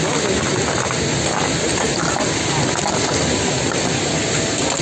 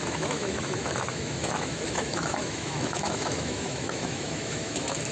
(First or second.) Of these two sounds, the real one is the first